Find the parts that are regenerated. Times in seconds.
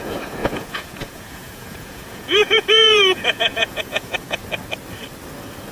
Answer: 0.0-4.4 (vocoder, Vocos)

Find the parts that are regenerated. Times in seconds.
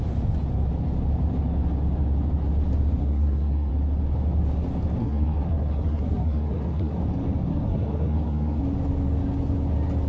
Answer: 3.0-3.7 (codec, SNAC); 5.0-7.0; 7.5-8.6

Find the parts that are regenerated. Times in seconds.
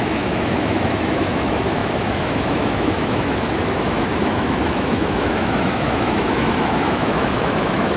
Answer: 0.0-8.0 (autoencoder, DAC-VAE)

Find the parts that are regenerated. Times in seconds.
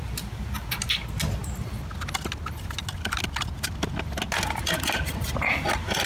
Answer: none